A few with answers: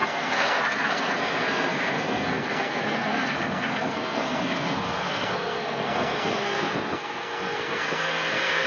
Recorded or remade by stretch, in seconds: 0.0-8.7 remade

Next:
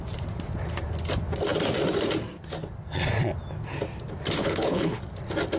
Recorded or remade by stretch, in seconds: 0.0-4.4 recorded; 4.4-5.0 remade; 5.0-5.6 recorded

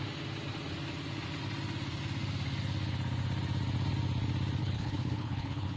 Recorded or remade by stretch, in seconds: 0.0-4.6 recorded; 4.6-5.8 remade

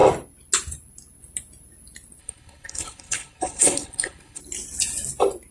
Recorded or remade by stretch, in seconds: 0.0-2.2 recorded; 2.2-4.4 remade; 4.4-5.5 recorded

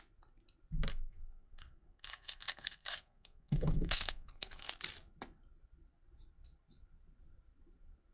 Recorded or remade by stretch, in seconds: 0.0-0.9 recorded; 0.9-4.7 remade; 4.7-8.1 recorded

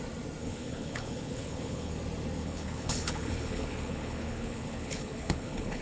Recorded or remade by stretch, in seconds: 0.0-0.4 recorded; 0.4-1.9 remade; 1.9-2.4 recorded; 2.4-5.8 remade